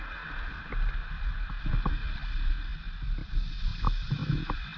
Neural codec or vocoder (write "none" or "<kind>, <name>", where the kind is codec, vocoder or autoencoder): none